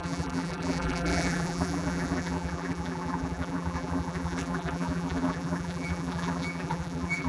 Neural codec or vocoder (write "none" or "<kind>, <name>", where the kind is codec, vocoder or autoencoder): vocoder, BigVGAN v2